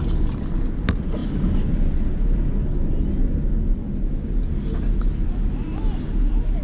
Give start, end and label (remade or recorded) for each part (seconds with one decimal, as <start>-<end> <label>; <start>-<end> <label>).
0.0-6.6 recorded